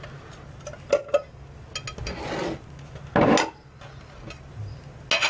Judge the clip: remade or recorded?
recorded